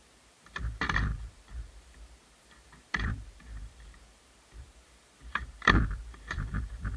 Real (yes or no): no